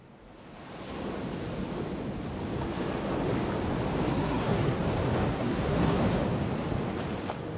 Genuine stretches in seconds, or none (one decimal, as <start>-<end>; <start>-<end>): 0.0-4.1; 4.8-5.3; 6.0-7.6